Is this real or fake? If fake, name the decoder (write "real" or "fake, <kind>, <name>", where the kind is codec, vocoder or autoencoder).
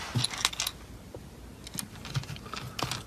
real